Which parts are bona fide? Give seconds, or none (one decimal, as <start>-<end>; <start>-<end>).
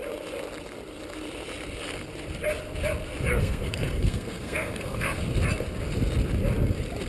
0.0-3.3; 5.2-7.1